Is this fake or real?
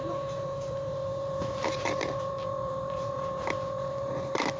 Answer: fake